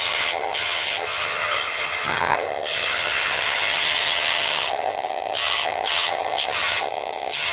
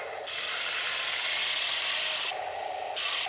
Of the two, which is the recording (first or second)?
second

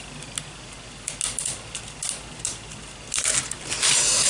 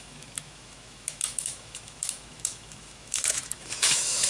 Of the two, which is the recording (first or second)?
first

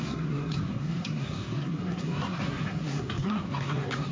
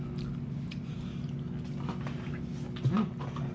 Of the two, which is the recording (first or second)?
second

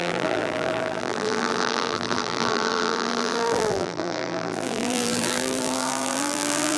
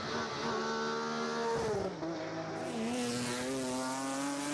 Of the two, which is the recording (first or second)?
second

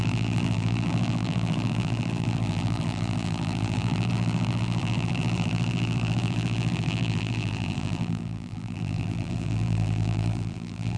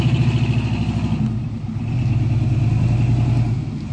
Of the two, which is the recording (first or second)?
second